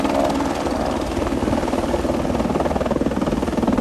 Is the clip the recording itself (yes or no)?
yes